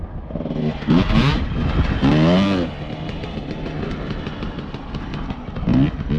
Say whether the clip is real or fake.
real